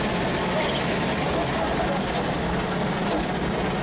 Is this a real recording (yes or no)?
yes